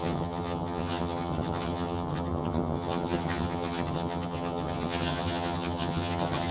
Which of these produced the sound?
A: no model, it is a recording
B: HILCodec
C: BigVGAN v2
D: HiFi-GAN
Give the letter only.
D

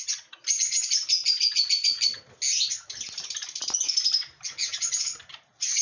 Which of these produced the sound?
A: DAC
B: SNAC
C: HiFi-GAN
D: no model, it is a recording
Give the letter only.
D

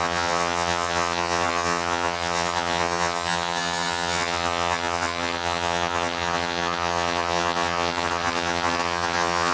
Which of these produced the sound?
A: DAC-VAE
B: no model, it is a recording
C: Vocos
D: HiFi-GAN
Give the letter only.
D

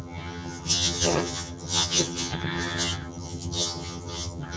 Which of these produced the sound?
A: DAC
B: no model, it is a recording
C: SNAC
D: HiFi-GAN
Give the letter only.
D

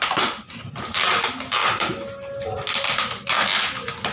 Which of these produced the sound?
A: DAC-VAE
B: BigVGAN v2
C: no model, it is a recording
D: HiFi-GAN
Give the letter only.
C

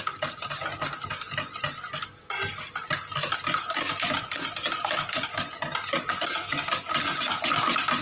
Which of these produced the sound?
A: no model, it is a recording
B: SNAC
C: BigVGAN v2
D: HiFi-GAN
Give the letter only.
A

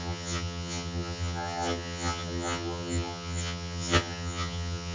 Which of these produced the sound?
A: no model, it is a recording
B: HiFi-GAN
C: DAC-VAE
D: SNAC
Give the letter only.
B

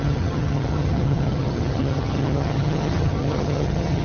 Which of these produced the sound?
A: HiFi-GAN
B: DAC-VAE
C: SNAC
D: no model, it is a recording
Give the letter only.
A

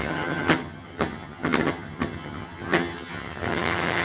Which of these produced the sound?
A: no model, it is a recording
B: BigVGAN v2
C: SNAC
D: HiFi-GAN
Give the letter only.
D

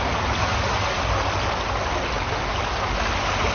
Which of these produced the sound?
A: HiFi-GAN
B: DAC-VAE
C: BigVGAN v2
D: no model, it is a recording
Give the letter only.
D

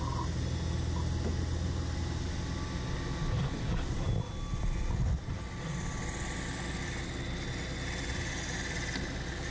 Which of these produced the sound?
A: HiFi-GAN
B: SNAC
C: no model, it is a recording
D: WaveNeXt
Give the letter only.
C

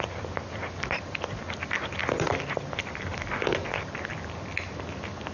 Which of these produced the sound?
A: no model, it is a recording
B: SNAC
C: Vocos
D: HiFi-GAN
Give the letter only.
A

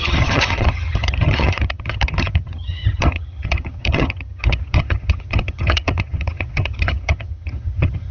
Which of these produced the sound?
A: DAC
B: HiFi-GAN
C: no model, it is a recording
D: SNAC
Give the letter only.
B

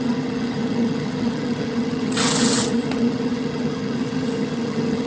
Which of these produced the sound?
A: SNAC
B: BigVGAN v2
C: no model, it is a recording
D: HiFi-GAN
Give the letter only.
D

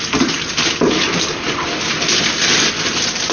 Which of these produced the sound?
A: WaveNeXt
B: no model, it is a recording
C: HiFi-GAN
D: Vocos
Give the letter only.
B